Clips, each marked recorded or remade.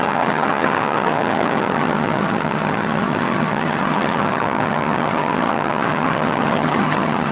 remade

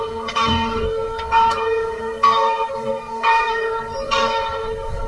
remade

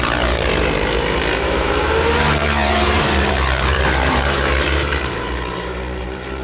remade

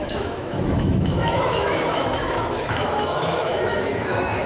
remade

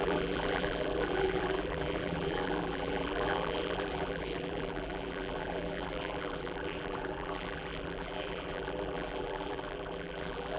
remade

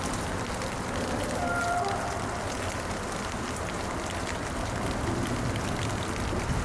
recorded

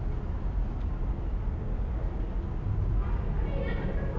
recorded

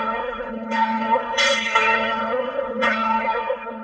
remade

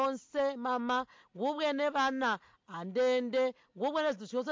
recorded